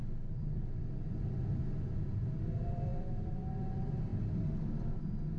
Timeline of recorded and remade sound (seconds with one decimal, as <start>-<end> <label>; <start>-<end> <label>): 0.0-5.4 recorded